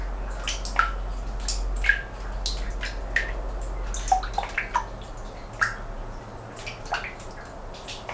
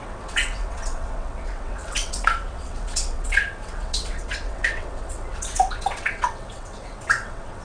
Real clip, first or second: first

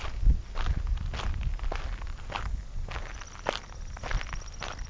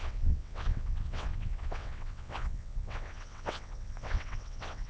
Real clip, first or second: first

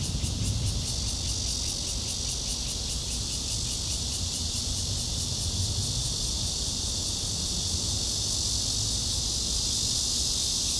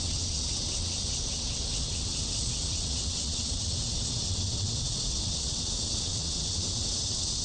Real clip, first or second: first